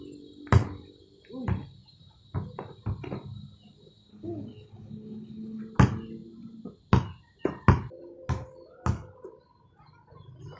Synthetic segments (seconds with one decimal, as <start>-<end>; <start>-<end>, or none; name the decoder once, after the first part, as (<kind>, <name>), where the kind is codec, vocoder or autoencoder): 4.1-5.6 (codec, HILCodec)